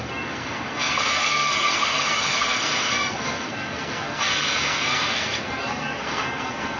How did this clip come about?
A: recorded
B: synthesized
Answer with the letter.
B